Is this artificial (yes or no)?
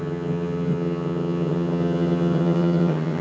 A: yes